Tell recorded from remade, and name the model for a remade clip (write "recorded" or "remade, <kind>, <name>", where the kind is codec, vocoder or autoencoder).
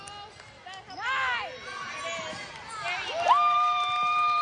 recorded